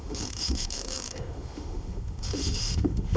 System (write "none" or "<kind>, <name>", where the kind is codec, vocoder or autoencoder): autoencoder, DAC-VAE